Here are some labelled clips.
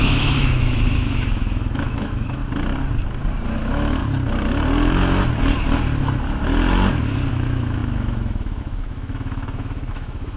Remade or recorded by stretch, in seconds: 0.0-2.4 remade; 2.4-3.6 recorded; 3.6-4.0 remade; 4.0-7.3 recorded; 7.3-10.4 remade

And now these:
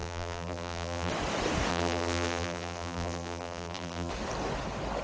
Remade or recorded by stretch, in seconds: 0.0-1.1 remade; 1.1-1.7 recorded; 1.7-4.1 remade; 4.1-5.0 recorded

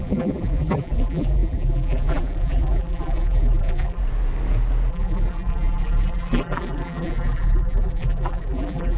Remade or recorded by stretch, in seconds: 0.0-4.0 remade; 4.0-4.9 recorded; 4.9-9.0 remade

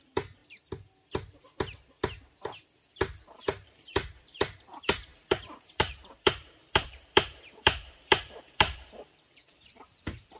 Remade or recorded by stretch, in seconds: 0.0-0.4 remade; 0.4-3.3 recorded; 3.3-10.4 remade